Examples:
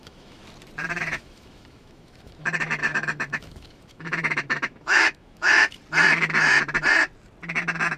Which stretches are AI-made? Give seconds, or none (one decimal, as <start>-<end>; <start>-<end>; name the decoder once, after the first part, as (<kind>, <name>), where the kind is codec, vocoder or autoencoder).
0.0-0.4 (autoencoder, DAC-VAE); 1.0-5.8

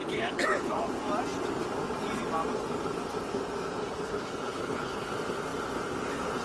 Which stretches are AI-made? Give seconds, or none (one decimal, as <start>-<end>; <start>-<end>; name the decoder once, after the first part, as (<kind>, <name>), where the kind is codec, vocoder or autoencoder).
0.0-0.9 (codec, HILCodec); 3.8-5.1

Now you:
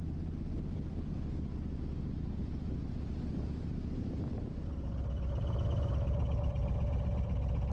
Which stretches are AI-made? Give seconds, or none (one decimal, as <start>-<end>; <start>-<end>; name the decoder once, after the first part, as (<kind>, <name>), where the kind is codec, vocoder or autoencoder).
0.9-1.5 (vocoder, BigVGAN v2)

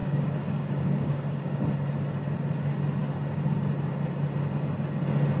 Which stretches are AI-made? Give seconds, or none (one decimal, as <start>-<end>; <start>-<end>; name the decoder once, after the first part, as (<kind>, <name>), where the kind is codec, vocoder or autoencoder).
0.0-1.6 (codec, DAC)

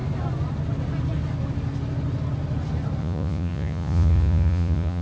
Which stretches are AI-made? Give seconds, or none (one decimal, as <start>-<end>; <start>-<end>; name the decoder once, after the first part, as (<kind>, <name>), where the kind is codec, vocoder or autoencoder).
3.0-5.0 (vocoder, Vocos)

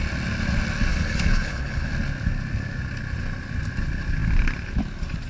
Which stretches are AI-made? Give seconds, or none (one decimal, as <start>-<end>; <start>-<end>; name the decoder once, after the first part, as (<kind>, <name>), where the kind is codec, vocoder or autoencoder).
0.9-1.9 (codec, HILCodec)